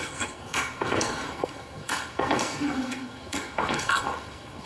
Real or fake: fake